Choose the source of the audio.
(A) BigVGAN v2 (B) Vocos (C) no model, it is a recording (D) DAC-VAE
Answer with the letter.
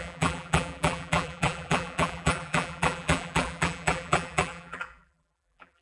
A